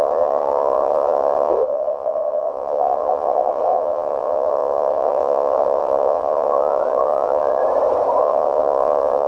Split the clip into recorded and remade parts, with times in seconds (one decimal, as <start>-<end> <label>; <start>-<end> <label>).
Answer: 0.0-7.6 remade; 7.6-8.2 recorded; 8.2-9.3 remade